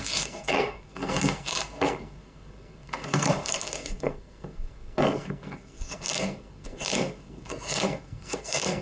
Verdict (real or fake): fake